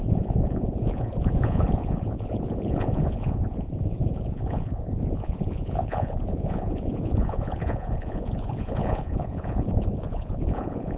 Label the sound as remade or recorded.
remade